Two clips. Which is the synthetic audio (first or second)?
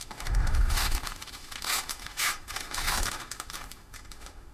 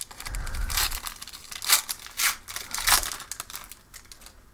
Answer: first